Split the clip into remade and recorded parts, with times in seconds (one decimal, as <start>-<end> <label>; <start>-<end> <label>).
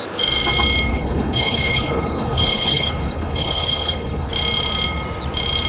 0.0-0.9 recorded; 0.9-4.3 remade; 4.3-5.7 recorded